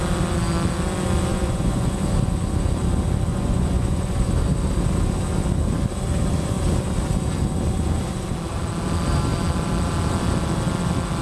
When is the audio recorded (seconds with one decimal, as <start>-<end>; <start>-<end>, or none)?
0.0-1.3; 2.0-3.3; 4.3-11.2